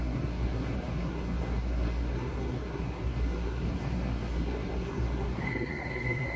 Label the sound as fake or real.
fake